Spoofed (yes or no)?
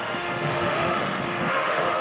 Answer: yes